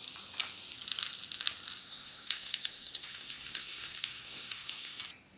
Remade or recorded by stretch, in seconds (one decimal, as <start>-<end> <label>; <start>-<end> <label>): 0.0-1.8 recorded; 1.8-5.0 remade; 5.0-5.4 recorded